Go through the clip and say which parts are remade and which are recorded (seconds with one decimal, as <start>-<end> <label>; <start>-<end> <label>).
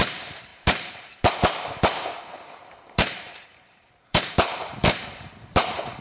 0.0-6.0 remade